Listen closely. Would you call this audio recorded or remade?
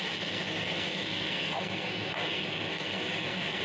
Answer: remade